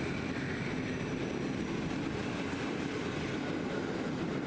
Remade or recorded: recorded